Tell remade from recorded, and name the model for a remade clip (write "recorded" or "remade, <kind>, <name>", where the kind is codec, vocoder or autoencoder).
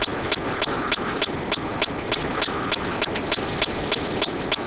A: recorded